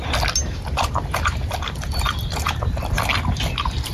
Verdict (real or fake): real